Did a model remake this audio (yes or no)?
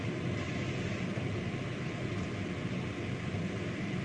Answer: no